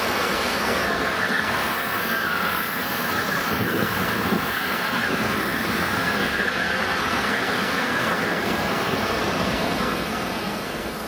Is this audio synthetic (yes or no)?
yes